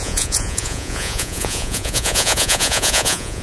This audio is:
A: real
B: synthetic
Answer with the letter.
B